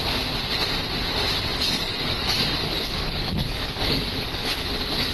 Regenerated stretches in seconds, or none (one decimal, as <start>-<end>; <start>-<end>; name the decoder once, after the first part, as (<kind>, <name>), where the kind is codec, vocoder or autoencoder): 1.5-4.6 (codec, DAC)